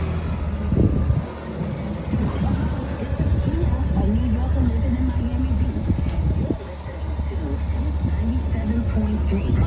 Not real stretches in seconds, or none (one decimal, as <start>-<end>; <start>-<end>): none